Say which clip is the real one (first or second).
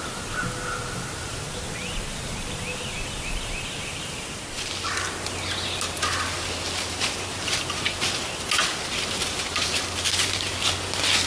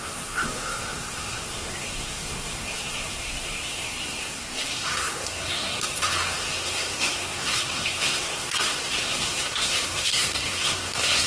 first